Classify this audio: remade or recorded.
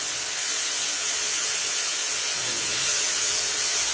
remade